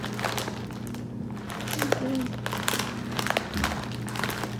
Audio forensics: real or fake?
real